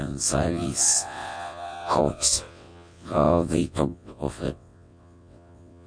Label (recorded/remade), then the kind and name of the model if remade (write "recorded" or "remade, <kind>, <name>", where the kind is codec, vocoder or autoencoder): remade, vocoder, WaveNeXt